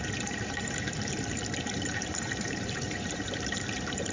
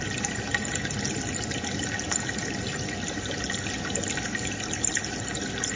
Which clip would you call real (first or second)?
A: second